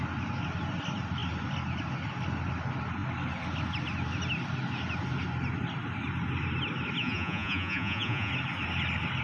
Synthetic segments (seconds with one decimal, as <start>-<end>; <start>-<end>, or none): 7.0-8.3